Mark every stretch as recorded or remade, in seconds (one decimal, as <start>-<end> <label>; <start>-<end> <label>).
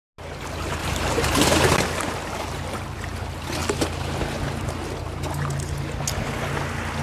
0.0-0.8 recorded; 0.8-1.3 remade; 1.3-7.0 recorded